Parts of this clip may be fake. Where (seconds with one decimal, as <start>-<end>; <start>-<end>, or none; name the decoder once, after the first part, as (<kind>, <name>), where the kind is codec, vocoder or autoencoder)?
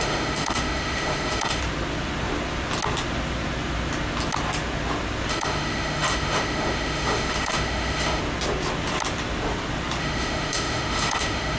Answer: 0.0-1.6 (autoencoder, DAC-VAE); 5.3-8.2; 10.0-11.6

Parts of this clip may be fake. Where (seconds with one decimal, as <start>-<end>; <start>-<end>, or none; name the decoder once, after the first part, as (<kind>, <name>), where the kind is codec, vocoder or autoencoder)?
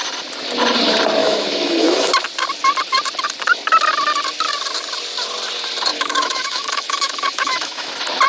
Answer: 1.2-2.1 (autoencoder, DAC-VAE); 5.9-7.9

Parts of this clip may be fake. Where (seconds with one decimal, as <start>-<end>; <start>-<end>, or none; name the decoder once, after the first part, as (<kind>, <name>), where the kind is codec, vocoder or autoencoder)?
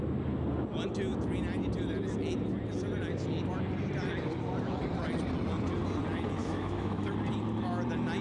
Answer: 6.4-7.1 (autoencoder, DAC-VAE)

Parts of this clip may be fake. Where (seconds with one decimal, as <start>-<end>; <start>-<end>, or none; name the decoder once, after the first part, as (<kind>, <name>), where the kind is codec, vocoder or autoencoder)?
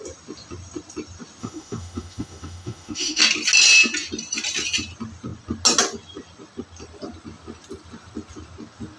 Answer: 1.4-3.2 (autoencoder, DAC-VAE)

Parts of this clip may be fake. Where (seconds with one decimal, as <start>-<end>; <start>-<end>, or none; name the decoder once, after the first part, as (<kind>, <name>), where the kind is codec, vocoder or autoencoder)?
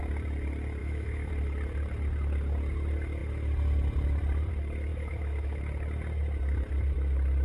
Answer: 0.8-1.3 (autoencoder, DAC-VAE); 4.9-5.6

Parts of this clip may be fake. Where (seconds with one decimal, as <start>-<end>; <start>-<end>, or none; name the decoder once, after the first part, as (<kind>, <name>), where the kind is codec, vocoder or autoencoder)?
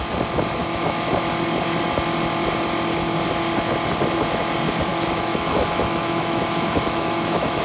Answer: 0.6-1.1 (autoencoder, DAC-VAE); 4.9-7.6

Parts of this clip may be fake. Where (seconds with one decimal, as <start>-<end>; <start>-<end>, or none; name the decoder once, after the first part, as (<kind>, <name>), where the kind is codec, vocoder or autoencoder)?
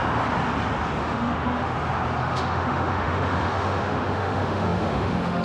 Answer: 1.0-1.7 (autoencoder, DAC-VAE); 2.2-5.4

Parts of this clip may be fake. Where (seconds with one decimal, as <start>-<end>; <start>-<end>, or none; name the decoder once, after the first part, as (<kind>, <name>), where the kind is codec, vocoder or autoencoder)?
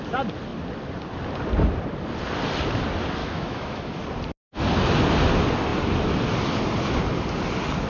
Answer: 3.2-4.0 (autoencoder, DAC-VAE)